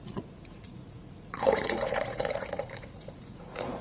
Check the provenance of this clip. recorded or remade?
remade